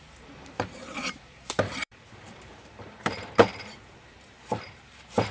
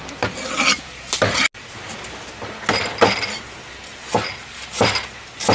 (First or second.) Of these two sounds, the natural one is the second